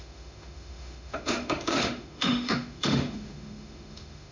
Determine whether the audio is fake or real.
fake